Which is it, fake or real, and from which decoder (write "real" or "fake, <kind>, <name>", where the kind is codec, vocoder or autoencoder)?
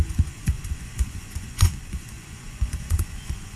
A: fake, vocoder, Vocos